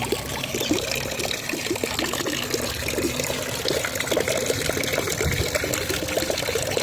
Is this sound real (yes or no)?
yes